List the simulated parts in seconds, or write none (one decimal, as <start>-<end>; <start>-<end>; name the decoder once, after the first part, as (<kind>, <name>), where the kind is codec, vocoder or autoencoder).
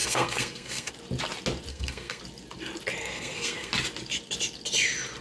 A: 0.0-0.9 (codec, SNAC); 1.7-2.2; 3.0-3.7